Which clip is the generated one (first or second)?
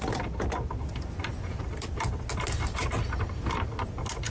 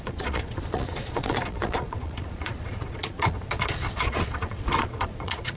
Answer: second